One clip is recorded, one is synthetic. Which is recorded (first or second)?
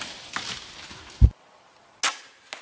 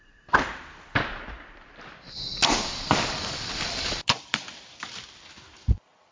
first